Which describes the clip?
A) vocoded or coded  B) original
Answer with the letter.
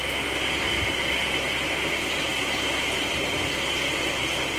B